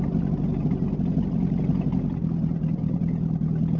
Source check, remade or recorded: recorded